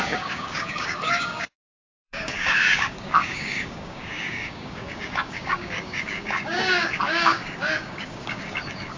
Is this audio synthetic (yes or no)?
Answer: yes